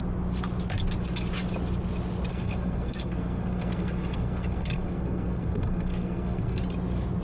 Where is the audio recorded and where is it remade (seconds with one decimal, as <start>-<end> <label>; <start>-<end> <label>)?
0.0-2.3 recorded; 2.3-6.6 remade; 6.6-7.2 recorded